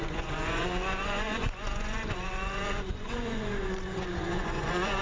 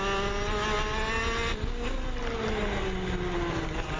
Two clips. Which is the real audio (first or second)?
second